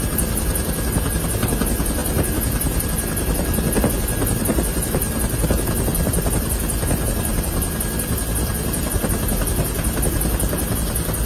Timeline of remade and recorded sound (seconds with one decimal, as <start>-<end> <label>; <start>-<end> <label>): 0.0-11.3 recorded